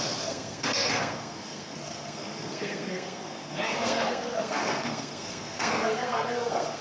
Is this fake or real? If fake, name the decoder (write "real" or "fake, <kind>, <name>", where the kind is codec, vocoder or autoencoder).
fake, codec, SNAC